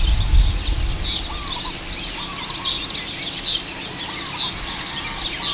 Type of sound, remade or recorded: recorded